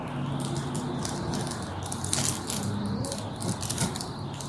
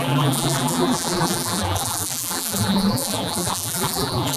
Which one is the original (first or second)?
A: first